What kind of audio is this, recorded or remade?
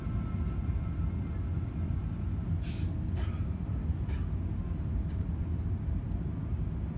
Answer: recorded